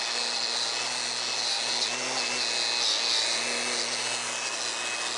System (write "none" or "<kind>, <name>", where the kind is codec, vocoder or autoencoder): none